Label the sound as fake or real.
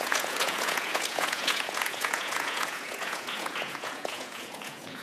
fake